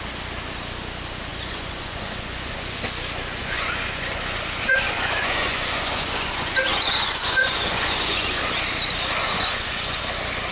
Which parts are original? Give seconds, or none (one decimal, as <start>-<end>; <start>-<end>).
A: 0.0-1.3; 2.8-3.4; 8.4-9.2; 10.0-10.5